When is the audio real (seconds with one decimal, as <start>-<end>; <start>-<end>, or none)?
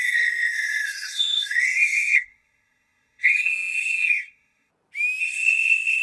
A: 4.7-5.2